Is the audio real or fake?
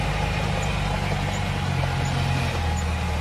real